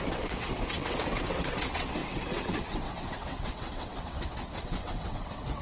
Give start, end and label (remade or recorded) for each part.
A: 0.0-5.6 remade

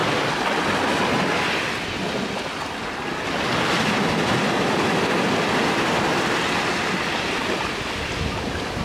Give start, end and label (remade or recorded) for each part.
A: 0.0-8.8 recorded

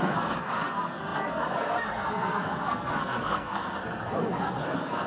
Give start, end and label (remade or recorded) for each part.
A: 0.0-5.1 remade